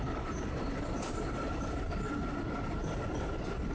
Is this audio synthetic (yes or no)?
no